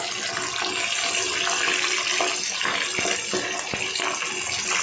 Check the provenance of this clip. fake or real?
real